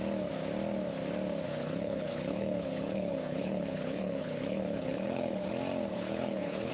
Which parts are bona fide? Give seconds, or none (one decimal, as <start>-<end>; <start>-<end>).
0.0-1.5; 5.5-5.9